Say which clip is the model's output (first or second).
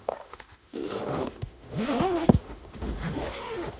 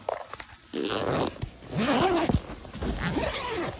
first